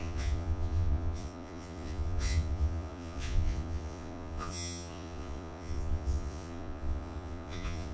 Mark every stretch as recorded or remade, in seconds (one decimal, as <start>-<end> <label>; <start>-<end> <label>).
0.0-7.9 remade